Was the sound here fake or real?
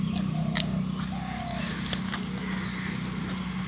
real